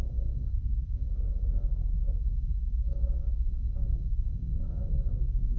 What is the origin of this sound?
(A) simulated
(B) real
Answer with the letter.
A